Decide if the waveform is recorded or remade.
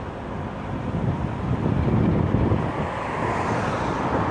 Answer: recorded